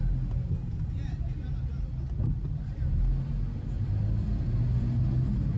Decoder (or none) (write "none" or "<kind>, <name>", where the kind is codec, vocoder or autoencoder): none